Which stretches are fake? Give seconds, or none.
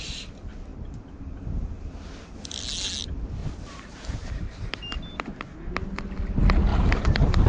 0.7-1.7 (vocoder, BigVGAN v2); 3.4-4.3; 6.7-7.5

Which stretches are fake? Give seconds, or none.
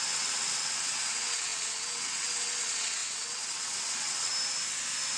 0.0-4.3 (vocoder, WaveNeXt)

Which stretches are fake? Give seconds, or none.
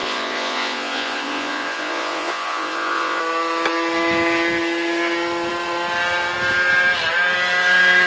0.0-3.2 (vocoder, Vocos)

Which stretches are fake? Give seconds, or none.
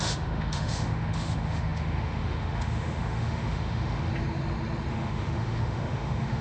0.0-4.1 (autoencoder, DAC-VAE); 4.9-6.4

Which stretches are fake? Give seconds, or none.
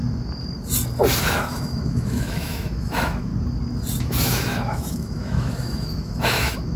1.2-3.3 (autoencoder, DAC-VAE); 4.0-6.8